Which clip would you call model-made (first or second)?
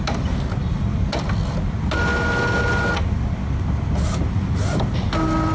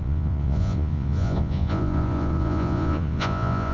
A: second